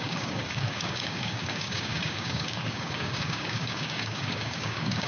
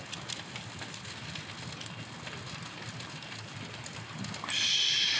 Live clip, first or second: second